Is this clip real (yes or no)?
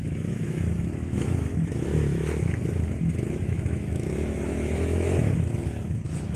no